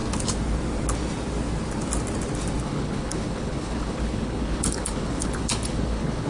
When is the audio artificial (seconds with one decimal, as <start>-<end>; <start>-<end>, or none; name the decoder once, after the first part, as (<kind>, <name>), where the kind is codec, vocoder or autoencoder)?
2.6-6.3 (codec, HILCodec)